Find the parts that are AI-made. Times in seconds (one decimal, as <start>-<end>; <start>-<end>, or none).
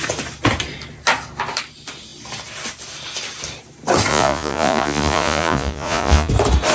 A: 4.1-6.3